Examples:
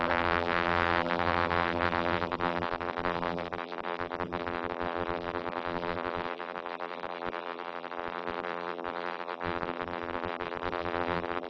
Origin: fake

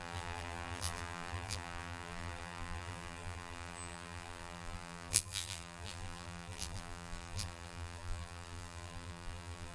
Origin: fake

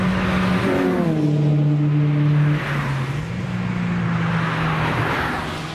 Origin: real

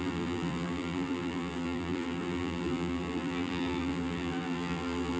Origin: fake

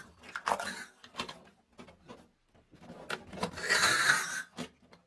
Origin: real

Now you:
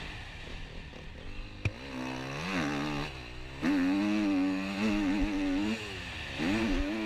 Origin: real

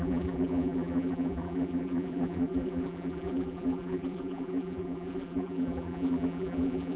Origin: fake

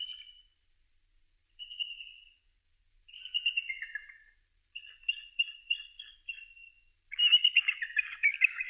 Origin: real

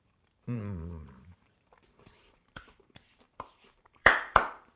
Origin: fake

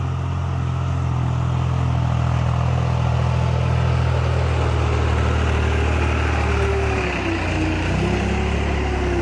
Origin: real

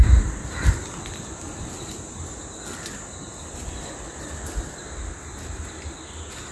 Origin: real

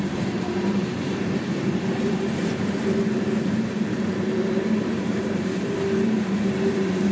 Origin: fake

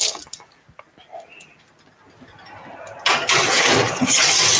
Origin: real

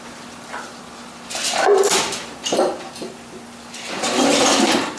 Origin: fake